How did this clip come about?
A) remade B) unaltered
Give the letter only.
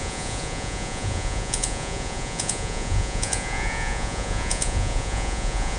A